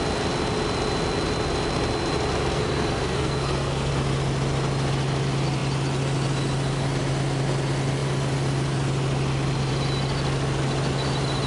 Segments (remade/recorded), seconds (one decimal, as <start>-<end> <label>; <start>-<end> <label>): 0.0-2.5 recorded; 2.5-3.9 remade; 3.9-11.5 recorded